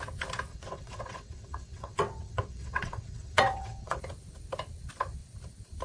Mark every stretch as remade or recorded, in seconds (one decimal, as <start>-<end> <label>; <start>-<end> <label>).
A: 0.0-0.5 recorded; 0.5-4.0 remade; 4.0-5.8 recorded

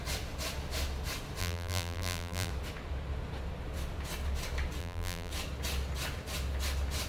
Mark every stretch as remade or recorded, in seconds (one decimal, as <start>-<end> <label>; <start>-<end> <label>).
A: 0.0-1.4 recorded; 1.4-2.5 remade; 2.5-4.8 recorded; 4.8-5.3 remade; 5.3-7.1 recorded

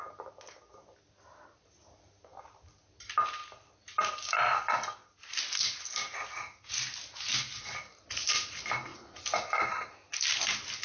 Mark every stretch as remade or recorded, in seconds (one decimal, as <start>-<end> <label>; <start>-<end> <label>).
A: 0.0-10.8 recorded

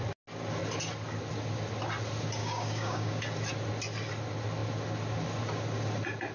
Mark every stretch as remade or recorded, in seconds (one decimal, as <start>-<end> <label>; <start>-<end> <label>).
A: 0.0-2.4 recorded; 2.4-3.2 remade; 3.2-6.3 recorded

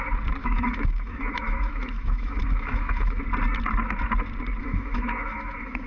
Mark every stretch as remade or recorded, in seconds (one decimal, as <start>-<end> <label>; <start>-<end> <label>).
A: 0.0-0.4 recorded; 0.4-3.2 remade; 3.2-4.6 recorded; 4.6-5.9 remade